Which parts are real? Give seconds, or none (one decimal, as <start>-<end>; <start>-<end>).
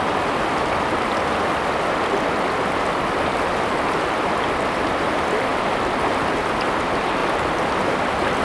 0.0-8.4